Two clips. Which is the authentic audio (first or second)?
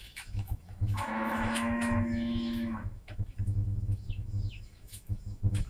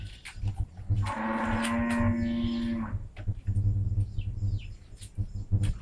second